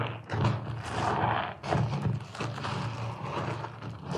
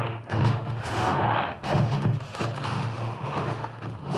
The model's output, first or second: second